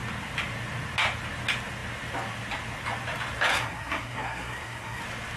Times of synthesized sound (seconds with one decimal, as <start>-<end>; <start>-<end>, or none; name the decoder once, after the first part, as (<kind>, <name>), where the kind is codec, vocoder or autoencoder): 3.5-5.0 (codec, SNAC)

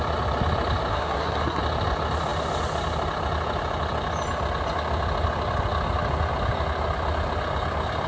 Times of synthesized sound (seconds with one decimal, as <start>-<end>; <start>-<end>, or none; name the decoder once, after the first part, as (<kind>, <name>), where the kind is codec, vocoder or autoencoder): 0.9-1.6 (codec, SNAC)

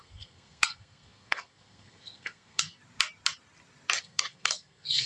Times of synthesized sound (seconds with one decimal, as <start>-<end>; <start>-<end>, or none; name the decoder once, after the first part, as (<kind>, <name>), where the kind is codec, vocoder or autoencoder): 0.0-2.8 (codec, SNAC); 4.0-5.1

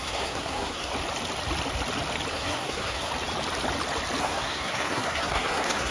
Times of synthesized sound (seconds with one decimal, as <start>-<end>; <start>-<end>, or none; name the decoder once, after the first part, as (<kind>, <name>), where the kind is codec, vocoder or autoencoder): 0.0-0.9 (codec, SNAC); 2.3-3.1; 4.2-5.9

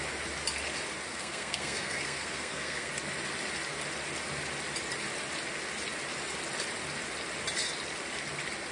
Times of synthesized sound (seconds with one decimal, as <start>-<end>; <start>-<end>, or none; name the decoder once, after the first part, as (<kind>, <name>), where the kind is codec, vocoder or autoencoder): 1.1-2.9 (codec, SNAC)

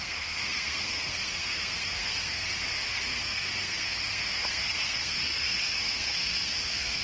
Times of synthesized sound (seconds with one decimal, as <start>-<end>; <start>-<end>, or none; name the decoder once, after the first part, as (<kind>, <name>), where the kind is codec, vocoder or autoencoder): 0.0-7.0 (codec, SNAC)